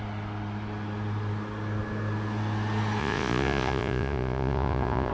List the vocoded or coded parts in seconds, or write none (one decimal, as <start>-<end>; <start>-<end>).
3.0-5.1